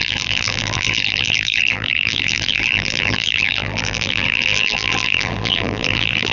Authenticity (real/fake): fake